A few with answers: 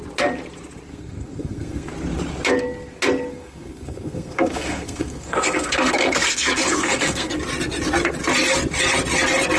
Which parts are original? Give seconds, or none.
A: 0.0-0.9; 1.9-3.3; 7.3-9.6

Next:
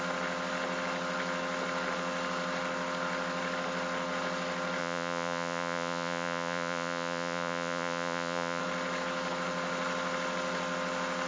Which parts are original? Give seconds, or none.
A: 0.0-4.8; 8.6-11.3

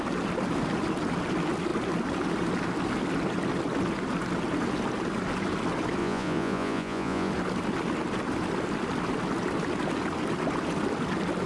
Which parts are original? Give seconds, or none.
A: 0.0-6.0; 7.3-11.5

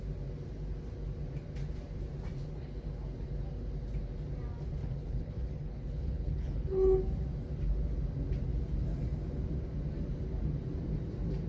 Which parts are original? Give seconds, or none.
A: 0.0-4.8; 7.0-11.5

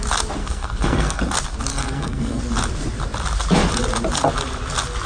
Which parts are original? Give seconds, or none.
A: 0.0-0.4; 1.2-1.7; 2.4-5.1

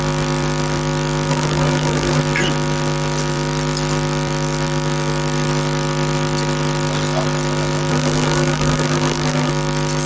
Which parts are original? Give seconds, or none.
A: 0.0-1.3; 2.2-7.9; 9.5-10.1